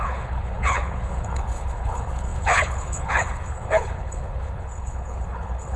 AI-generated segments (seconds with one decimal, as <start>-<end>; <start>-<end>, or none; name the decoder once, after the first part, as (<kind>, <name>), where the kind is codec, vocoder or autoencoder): 0.0-5.8 (codec, HILCodec)